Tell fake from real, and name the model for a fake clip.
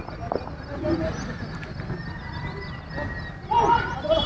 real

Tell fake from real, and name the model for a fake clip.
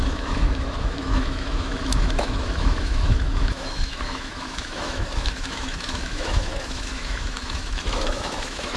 fake, autoencoder, DAC-VAE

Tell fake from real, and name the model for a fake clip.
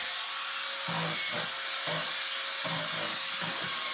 real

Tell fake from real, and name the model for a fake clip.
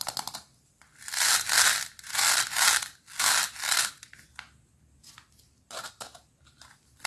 real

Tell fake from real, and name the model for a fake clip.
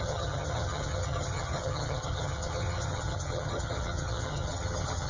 fake, vocoder, HiFi-GAN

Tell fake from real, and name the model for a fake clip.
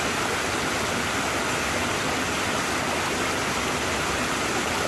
real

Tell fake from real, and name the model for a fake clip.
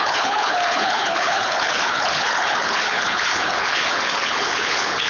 fake, codec, HILCodec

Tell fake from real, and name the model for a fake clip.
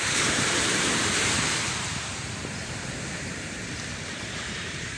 fake, vocoder, BigVGAN v2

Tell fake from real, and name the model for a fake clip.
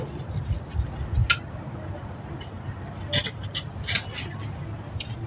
real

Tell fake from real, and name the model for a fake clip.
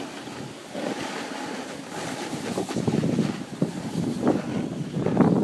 real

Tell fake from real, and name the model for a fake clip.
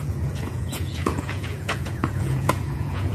fake, vocoder, Vocos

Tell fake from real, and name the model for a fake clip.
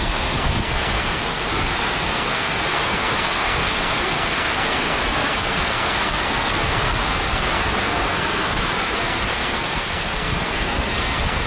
fake, codec, SNAC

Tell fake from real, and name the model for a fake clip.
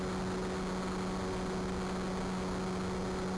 real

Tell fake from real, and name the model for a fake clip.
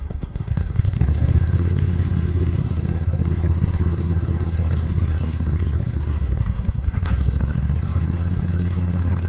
fake, codec, SNAC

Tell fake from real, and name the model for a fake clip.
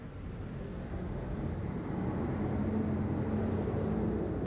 real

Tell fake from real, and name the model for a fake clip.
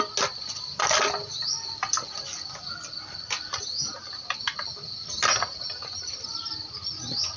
real